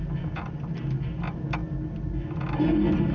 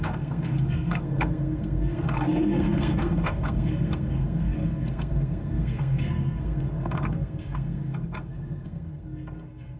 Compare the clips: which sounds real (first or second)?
first